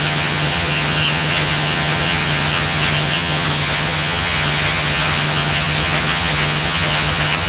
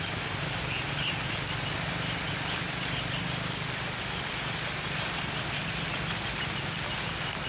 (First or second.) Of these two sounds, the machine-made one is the first